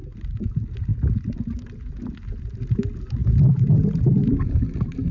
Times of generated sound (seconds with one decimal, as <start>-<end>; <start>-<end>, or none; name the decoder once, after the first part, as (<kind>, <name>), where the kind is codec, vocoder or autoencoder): none